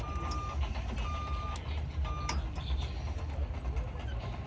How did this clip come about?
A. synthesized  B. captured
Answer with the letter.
B